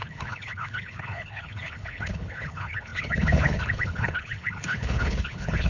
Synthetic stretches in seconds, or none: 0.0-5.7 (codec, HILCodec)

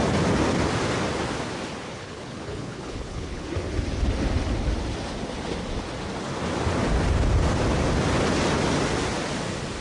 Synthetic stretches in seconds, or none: 1.9-3.5 (codec, HILCodec)

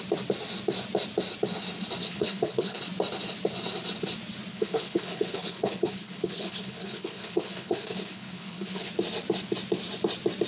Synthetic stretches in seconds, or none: 2.0-2.8 (codec, HILCodec); 4.5-8.9

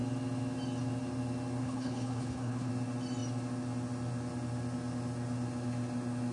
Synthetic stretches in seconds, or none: 1.6-2.7 (codec, HILCodec)

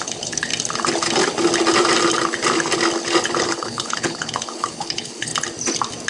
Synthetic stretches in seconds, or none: 0.0-0.5 (codec, HILCodec); 3.4-5.3

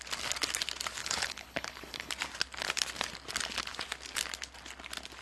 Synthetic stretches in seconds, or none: 1.0-2.1 (codec, HILCodec)

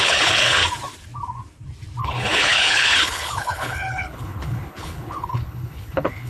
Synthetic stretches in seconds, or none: 0.0-0.6 (codec, HILCodec); 2.0-6.3